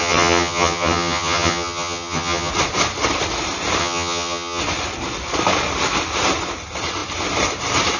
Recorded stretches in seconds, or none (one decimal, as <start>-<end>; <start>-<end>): 2.5-3.8; 4.6-8.0